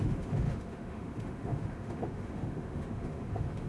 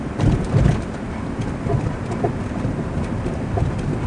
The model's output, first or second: first